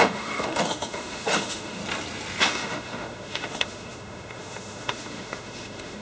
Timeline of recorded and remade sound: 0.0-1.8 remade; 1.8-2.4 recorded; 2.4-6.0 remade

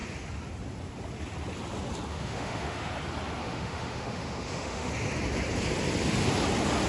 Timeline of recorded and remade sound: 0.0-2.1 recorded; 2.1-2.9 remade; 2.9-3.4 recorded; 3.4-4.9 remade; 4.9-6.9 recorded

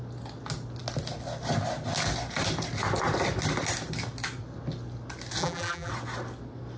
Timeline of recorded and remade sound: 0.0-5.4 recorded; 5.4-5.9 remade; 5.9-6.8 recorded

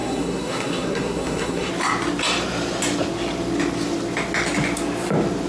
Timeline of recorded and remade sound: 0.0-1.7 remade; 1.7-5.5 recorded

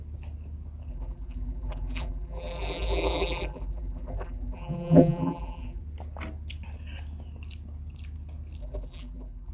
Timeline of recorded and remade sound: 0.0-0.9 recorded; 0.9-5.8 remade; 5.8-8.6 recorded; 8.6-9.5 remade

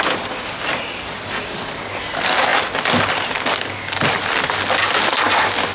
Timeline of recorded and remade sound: 0.0-5.7 recorded

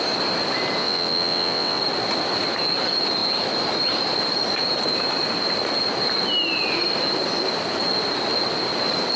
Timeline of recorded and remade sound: 0.0-0.8 recorded; 0.8-1.8 remade; 1.8-9.2 recorded